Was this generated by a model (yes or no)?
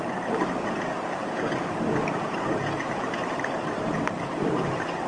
yes